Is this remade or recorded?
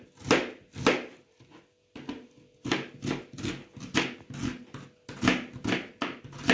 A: recorded